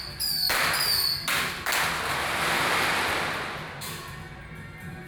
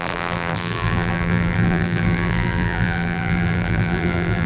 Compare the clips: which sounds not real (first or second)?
second